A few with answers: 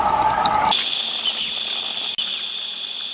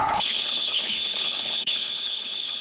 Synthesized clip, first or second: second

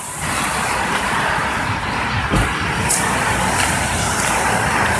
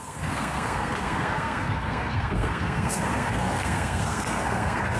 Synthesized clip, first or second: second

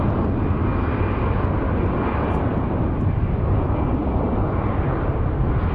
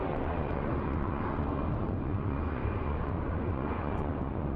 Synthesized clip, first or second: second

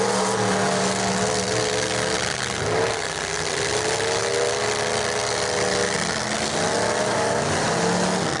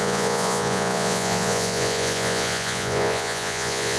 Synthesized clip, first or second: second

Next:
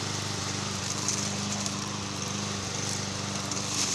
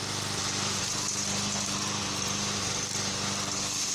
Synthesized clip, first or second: first